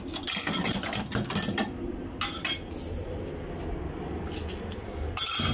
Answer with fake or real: real